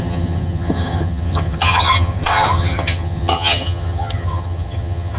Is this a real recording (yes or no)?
no